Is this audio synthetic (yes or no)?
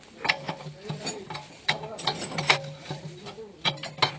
no